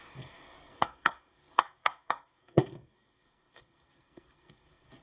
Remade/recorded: remade